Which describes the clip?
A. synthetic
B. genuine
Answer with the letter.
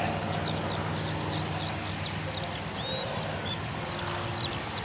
B